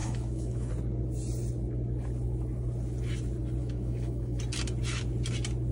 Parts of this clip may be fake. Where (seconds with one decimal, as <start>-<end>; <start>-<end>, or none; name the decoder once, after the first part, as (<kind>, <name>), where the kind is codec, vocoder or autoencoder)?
0.0-0.7 (autoencoder, DAC-VAE); 3.6-4.4